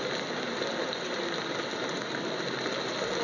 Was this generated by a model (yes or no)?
no